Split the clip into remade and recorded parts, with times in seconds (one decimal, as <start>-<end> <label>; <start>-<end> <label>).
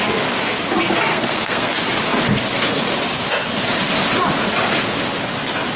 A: 0.0-1.1 recorded; 1.1-1.7 remade; 1.7-5.8 recorded